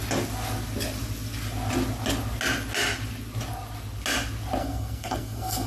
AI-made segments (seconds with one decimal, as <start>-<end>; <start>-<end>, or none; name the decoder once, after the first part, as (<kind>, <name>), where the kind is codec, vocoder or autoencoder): 4.6-5.7 (codec, SNAC)